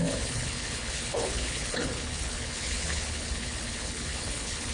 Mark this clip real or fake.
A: fake